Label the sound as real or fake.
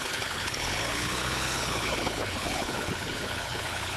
fake